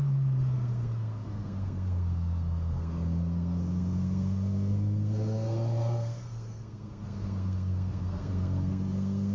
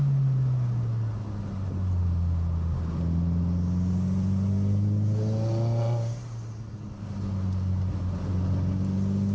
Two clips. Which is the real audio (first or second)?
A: second